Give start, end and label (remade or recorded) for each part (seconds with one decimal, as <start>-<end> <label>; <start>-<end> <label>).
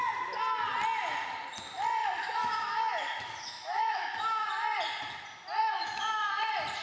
0.0-2.0 recorded; 2.0-4.5 remade; 4.5-5.6 recorded; 5.6-6.3 remade; 6.3-6.8 recorded